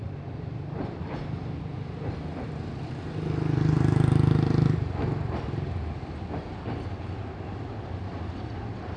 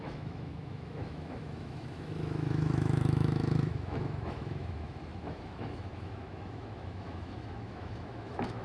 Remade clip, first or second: second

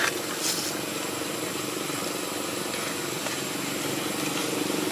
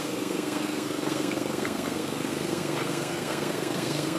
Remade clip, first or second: second